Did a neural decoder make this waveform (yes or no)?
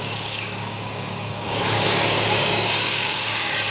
yes